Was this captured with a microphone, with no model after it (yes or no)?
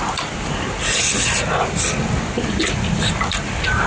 yes